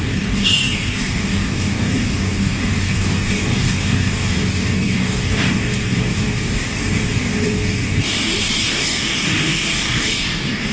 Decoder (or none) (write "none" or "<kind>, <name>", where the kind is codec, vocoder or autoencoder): codec, DAC